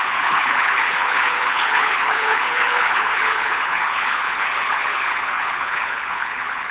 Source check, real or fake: fake